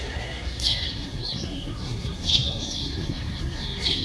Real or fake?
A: fake